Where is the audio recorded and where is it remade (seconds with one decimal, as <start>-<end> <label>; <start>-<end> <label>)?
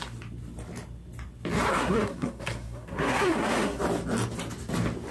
0.0-1.7 recorded; 1.7-3.8 remade; 3.8-5.1 recorded